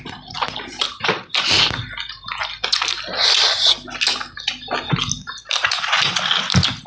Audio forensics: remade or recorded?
recorded